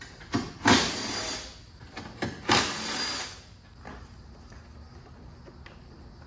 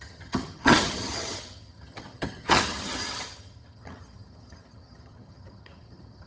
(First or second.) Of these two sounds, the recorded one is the first